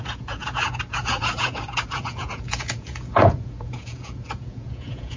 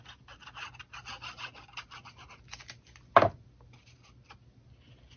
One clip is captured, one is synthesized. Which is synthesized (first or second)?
first